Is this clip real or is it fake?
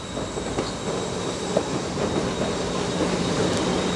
real